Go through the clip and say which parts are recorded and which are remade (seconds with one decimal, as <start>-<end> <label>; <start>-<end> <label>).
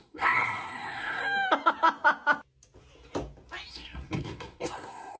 0.0-1.2 remade; 1.2-3.7 recorded; 3.7-5.2 remade